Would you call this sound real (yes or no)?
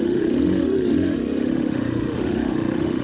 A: no